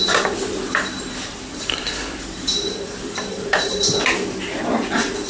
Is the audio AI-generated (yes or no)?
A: yes